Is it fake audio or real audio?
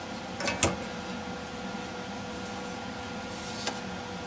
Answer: real